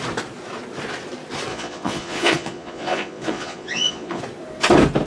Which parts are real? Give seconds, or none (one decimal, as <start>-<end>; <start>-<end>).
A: 0.0-1.5; 4.2-5.1